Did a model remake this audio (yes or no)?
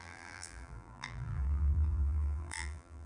yes